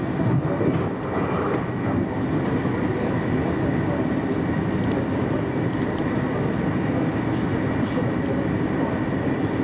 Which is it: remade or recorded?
recorded